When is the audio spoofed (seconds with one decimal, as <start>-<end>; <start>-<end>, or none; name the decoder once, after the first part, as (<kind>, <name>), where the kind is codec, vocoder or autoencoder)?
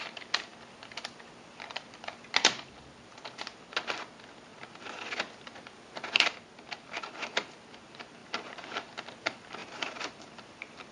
8.2-8.9 (vocoder, BigVGAN v2); 9.6-10.9